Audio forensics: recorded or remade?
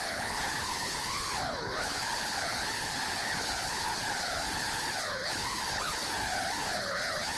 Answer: remade